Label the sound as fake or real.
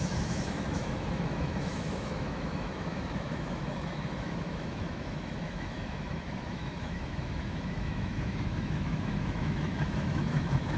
fake